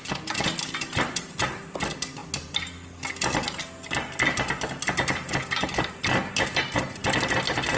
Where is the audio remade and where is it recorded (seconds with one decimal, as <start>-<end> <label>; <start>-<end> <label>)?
0.0-7.8 recorded